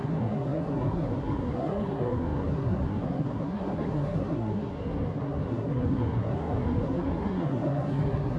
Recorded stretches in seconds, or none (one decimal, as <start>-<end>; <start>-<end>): none